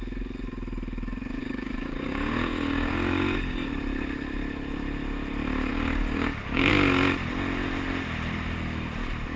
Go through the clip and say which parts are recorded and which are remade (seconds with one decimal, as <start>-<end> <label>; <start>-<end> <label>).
0.0-1.4 recorded; 1.4-3.7 remade; 3.7-5.7 recorded; 5.7-6.7 remade; 6.7-9.4 recorded